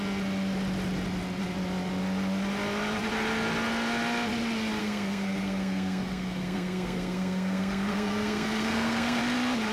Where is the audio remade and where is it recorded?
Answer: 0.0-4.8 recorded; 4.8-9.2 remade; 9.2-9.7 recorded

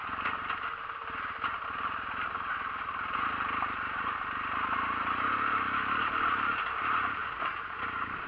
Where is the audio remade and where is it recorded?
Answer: 0.0-8.3 recorded

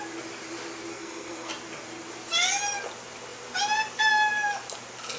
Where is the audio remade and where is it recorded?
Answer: 0.0-0.9 recorded; 0.9-1.5 remade; 1.5-5.2 recorded